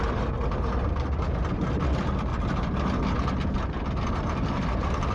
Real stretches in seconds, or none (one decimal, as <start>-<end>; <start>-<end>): 2.3-4.1